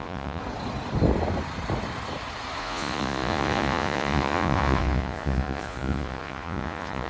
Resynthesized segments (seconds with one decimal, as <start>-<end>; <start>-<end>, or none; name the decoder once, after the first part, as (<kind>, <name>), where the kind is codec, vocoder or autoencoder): 0.0-0.4 (vocoder, Vocos); 2.6-7.1